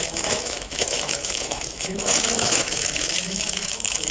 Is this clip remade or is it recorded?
remade